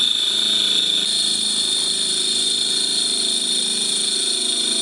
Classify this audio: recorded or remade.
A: recorded